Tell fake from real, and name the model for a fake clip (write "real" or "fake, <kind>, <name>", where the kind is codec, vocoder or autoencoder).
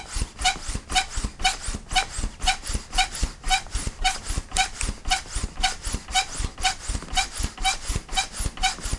real